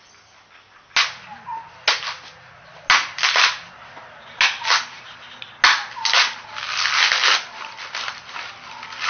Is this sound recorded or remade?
recorded